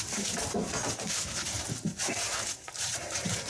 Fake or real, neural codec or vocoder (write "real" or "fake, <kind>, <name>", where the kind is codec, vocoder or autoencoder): real